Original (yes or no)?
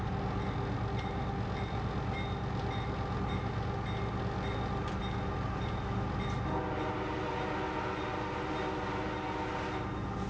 yes